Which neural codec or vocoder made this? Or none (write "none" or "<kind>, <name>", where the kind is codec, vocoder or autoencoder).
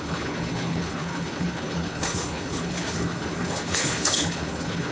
codec, HILCodec